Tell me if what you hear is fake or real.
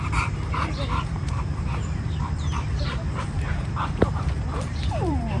fake